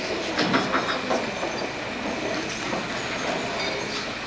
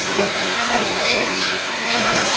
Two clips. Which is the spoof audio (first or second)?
second